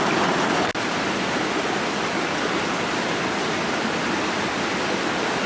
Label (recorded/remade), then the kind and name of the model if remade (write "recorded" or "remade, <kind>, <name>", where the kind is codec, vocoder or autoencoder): recorded